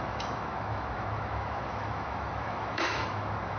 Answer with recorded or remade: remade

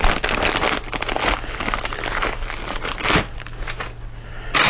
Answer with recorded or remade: recorded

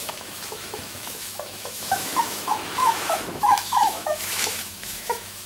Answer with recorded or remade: remade